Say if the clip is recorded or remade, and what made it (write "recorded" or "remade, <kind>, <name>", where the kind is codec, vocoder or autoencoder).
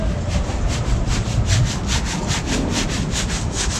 remade, vocoder, BigVGAN v2